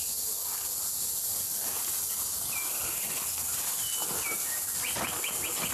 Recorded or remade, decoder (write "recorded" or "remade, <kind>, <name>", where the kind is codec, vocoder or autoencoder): recorded